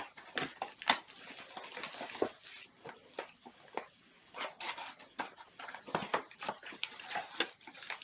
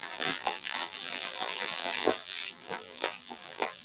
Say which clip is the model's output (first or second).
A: second